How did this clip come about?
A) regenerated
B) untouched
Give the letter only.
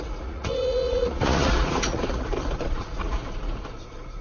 A